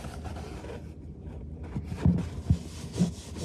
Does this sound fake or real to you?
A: real